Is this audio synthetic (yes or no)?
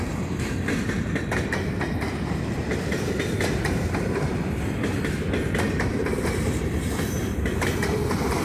yes